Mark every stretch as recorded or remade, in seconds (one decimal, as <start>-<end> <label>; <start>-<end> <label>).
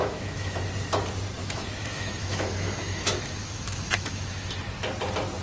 0.0-0.6 remade; 0.6-1.4 recorded; 1.4-4.6 remade; 4.6-5.4 recorded